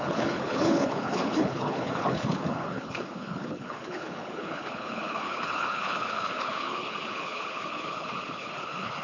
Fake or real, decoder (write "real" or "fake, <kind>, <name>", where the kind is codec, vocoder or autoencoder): fake, codec, HILCodec